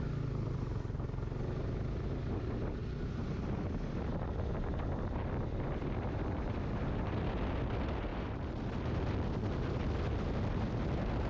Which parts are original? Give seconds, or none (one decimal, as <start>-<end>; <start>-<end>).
0.0-11.3

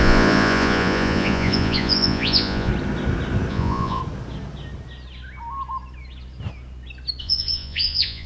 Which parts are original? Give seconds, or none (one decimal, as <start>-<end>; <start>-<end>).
2.7-3.5; 4.0-7.2

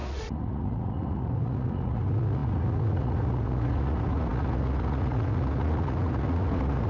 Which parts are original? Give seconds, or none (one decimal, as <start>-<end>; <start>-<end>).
none

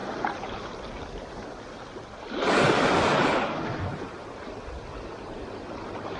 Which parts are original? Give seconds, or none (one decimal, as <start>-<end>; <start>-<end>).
0.0-6.2

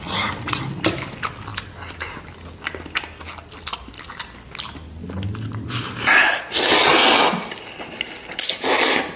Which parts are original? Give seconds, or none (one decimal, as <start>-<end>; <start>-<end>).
0.0-9.2

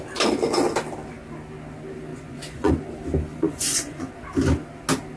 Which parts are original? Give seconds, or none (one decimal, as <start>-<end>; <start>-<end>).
0.0-2.1; 2.7-3.3; 4.1-5.2

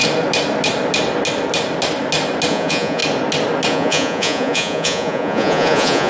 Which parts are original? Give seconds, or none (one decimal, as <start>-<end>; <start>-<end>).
0.0-2.5; 3.0-3.7

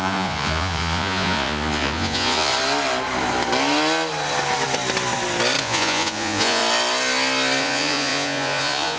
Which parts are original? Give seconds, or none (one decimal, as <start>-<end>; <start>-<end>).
2.5-5.6; 6.6-7.6